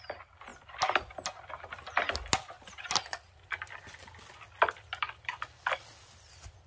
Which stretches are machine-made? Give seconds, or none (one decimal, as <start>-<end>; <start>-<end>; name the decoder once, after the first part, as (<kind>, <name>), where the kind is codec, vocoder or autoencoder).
0.0-0.5 (vocoder, BigVGAN v2); 3.8-6.7